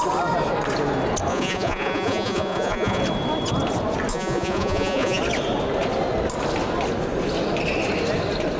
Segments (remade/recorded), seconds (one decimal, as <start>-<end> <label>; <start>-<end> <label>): 0.0-1.3 recorded; 1.3-3.0 remade; 3.0-4.1 recorded; 4.1-5.2 remade; 5.2-8.6 recorded